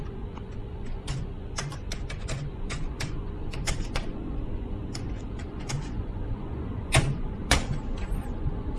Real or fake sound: fake